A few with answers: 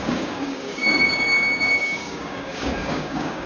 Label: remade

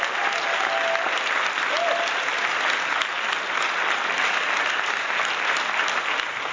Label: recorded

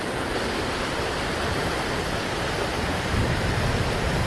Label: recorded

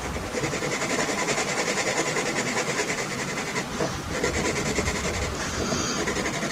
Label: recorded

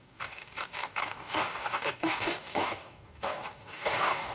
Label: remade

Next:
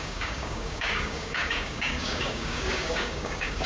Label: remade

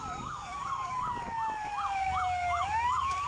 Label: remade